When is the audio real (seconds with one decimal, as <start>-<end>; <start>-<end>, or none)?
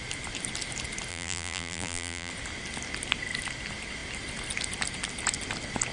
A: 0.0-1.1; 2.3-5.9